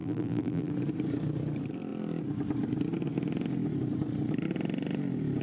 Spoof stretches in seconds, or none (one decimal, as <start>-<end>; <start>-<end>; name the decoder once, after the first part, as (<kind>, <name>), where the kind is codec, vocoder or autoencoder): 0.0-0.7 (vocoder, BigVGAN v2)